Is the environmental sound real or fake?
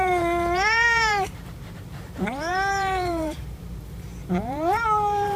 fake